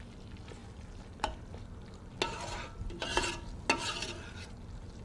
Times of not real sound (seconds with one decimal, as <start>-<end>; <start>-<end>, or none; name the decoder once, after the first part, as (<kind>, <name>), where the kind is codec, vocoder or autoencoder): none